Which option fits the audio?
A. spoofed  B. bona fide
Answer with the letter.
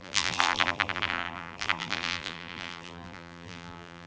A